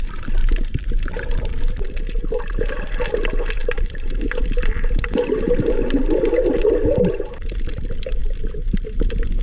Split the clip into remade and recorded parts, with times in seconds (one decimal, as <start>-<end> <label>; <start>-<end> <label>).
0.0-0.4 recorded; 0.4-2.8 remade; 2.8-3.6 recorded; 3.6-7.5 remade; 7.5-8.2 recorded; 8.2-9.0 remade; 9.0-9.4 recorded